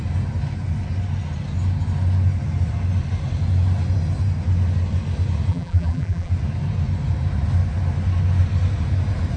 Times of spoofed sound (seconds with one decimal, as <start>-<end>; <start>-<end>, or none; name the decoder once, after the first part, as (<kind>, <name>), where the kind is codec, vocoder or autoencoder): 5.5-6.3 (vocoder, BigVGAN v2)

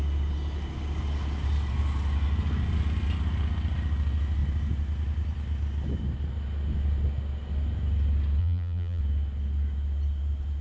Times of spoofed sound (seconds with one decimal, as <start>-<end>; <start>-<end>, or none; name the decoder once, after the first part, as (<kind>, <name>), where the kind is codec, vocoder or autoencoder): 8.4-9.0 (vocoder, BigVGAN v2)

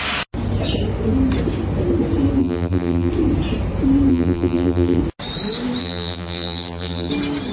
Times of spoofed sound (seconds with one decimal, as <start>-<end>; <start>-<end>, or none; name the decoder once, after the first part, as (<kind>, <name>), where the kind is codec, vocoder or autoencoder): 2.4-3.1 (vocoder, BigVGAN v2); 4.1-5.0; 5.8-7.1

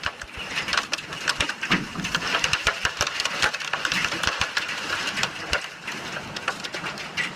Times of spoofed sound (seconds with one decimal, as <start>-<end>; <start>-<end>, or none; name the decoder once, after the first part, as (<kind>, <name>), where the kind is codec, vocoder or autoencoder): 0.0-7.4 (vocoder, BigVGAN v2)

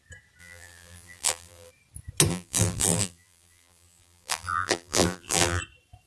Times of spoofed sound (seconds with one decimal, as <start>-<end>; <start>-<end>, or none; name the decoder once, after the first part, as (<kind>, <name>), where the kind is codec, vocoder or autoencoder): 0.4-1.7 (vocoder, BigVGAN v2); 2.3-5.6

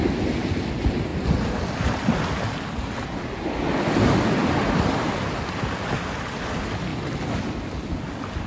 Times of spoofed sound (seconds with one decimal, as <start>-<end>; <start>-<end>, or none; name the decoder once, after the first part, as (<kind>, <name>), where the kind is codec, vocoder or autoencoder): none

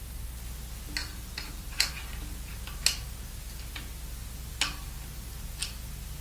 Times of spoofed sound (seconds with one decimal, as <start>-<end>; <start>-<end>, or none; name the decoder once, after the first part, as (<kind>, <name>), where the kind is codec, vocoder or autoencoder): 1.0-1.9 (vocoder, BigVGAN v2)